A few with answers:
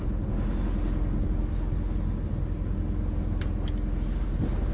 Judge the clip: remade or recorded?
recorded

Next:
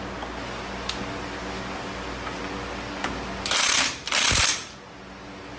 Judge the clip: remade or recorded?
recorded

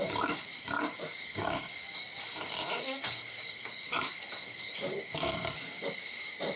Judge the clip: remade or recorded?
remade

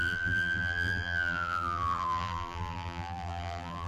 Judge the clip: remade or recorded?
remade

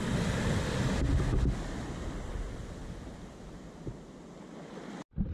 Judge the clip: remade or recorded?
recorded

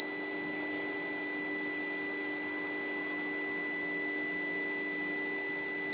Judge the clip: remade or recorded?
recorded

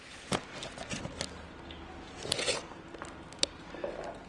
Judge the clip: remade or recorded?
recorded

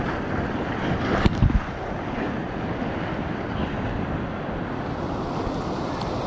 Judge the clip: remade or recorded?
recorded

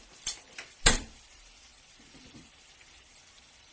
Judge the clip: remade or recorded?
remade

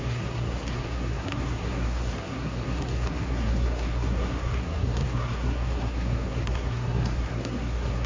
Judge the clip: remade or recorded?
remade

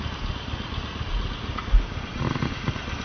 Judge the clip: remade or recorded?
recorded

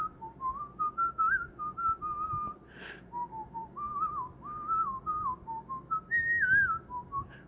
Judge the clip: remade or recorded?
recorded